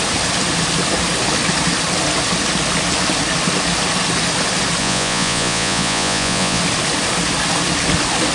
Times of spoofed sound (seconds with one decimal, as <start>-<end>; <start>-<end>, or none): 4.8-6.6